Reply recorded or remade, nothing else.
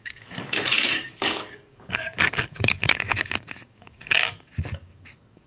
remade